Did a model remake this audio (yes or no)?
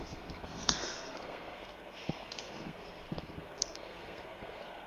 yes